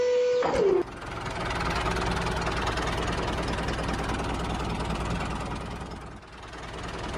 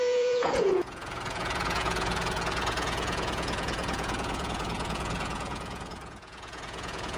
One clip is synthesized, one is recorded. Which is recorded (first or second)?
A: first